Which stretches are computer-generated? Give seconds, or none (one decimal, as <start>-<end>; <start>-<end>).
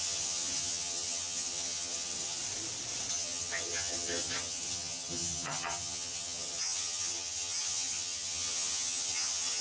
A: 0.0-2.4; 3.1-9.6